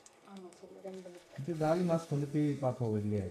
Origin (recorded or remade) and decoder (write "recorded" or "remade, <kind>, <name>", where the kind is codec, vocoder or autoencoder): remade, codec, SNAC